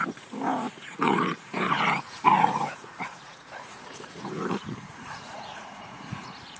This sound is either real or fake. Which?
fake